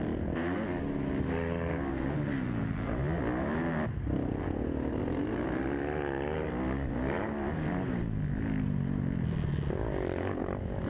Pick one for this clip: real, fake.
real